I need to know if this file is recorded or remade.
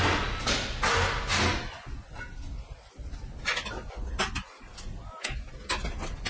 recorded